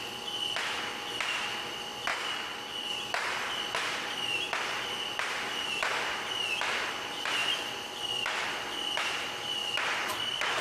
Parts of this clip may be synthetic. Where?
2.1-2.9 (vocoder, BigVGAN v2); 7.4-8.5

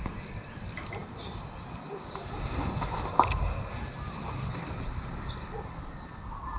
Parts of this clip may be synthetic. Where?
none

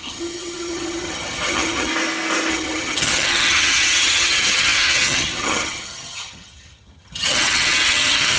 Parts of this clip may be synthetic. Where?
0.0-1.9 (vocoder, HiFi-GAN); 2.5-8.4

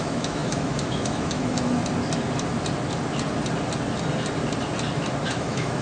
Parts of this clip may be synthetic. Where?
0.0-1.8 (autoencoder, DAC-VAE); 5.3-5.8

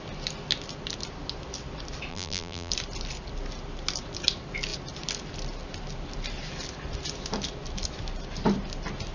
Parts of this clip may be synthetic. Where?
2.1-2.7 (vocoder, BigVGAN v2)

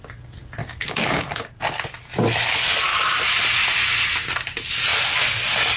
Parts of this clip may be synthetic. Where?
0.6-1.4 (codec, DAC)

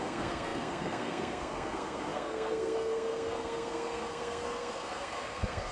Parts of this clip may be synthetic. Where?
0.0-5.7 (codec, SNAC)